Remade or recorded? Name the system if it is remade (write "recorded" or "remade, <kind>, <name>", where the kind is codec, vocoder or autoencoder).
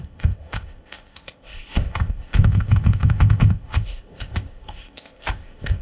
remade, codec, ZipCodec